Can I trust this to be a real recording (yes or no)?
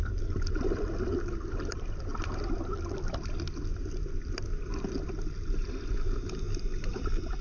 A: yes